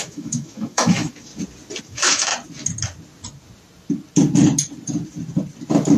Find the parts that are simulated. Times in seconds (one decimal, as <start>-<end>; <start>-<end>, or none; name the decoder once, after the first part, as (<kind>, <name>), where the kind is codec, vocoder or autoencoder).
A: 0.0-1.3 (autoencoder, DAC-VAE); 1.8-2.3